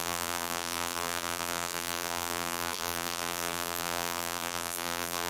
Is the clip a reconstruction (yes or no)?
yes